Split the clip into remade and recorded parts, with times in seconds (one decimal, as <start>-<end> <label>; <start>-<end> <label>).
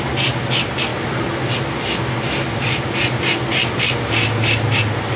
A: 0.0-5.2 recorded